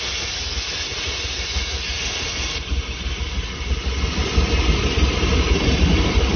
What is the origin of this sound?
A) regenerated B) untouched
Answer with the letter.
B